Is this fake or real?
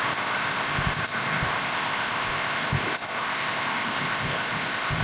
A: fake